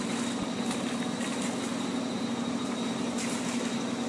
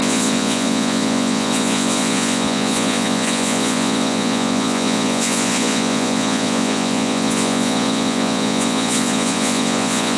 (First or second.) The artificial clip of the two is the second